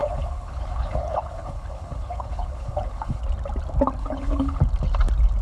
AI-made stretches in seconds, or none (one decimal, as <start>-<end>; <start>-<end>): 0.0-3.2; 4.0-4.6